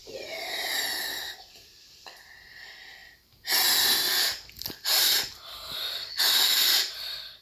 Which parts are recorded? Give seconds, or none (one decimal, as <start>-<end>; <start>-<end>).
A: none